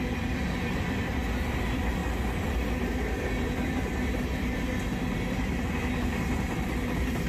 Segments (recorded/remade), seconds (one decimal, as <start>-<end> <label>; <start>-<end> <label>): 0.0-7.3 recorded